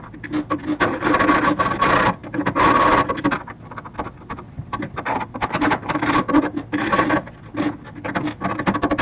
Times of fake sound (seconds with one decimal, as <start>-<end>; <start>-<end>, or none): none